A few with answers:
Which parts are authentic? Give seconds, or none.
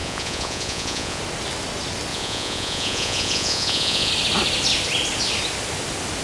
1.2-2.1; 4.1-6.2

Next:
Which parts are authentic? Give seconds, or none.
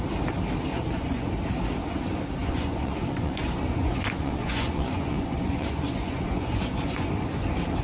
0.0-0.7; 1.3-2.4; 7.1-7.8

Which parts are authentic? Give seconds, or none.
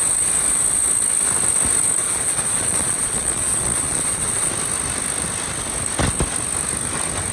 0.0-2.0; 4.5-7.3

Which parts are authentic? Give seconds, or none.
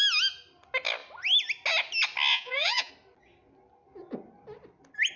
0.0-2.3; 2.9-5.2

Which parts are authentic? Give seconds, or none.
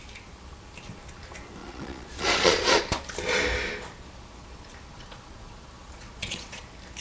0.0-1.6; 2.8-4.9; 6.6-7.0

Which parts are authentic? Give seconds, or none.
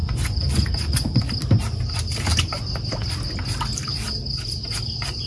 1.2-5.3